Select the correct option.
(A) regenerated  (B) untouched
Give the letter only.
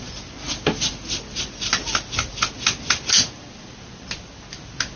B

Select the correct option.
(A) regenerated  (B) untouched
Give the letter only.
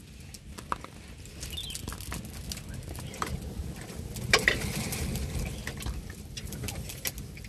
B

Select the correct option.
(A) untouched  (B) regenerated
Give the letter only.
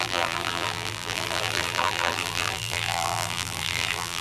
B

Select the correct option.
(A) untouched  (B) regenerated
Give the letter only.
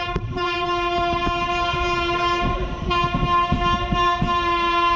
B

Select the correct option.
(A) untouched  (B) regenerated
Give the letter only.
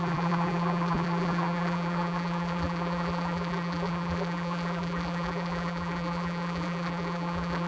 B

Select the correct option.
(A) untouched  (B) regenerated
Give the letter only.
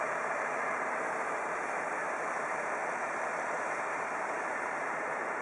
B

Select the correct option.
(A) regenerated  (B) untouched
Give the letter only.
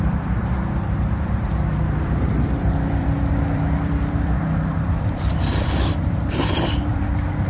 A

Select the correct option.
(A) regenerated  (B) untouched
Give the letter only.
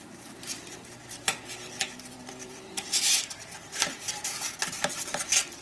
A